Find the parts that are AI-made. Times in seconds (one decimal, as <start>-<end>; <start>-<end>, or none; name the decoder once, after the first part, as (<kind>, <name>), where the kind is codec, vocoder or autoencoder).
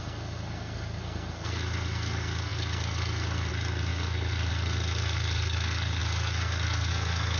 0.0-7.4 (codec, SNAC)